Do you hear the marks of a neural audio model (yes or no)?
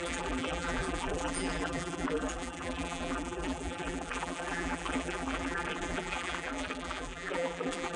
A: yes